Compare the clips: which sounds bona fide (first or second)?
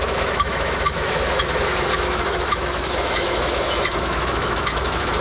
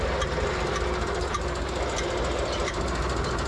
second